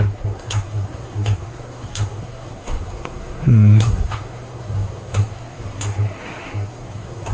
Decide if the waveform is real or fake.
fake